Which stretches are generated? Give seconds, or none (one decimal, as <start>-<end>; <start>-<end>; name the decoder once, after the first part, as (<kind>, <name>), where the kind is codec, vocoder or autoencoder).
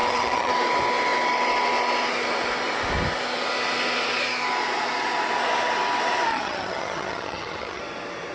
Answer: 0.0-0.5 (vocoder, HiFi-GAN); 6.3-7.8